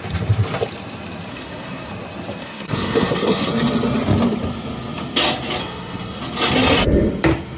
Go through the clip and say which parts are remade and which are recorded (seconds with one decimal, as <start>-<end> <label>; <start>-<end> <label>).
0.0-1.3 recorded; 1.3-1.9 remade; 1.9-2.4 recorded; 2.4-3.5 remade; 3.5-5.6 recorded; 5.6-6.2 remade; 6.2-7.6 recorded